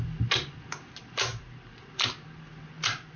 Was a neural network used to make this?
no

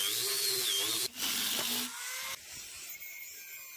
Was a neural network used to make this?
no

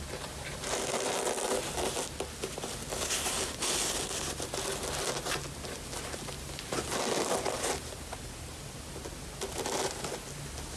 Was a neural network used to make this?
no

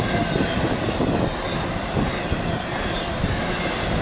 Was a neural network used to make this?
no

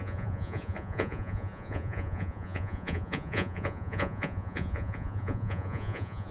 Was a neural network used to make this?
yes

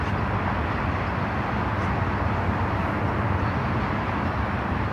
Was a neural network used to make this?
no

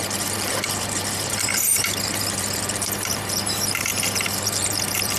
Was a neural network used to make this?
yes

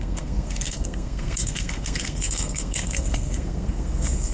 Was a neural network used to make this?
yes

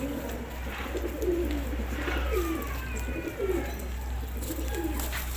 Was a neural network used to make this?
no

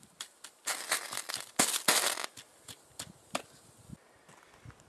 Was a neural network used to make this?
no